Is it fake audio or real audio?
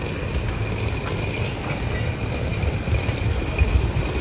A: real